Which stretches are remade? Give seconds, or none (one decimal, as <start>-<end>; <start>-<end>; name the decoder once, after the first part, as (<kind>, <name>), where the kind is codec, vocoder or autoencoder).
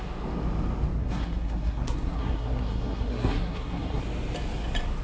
1.0-4.0 (codec, SNAC)